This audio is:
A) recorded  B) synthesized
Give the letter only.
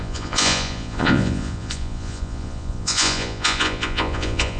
B